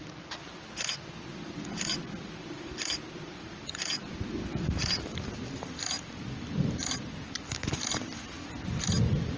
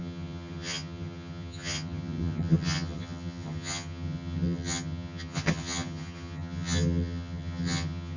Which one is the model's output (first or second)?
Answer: second